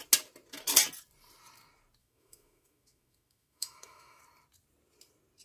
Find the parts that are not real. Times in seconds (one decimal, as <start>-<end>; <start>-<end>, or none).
2.0-4.2